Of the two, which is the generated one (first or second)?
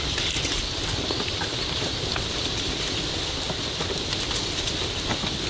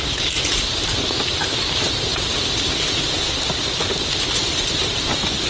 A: first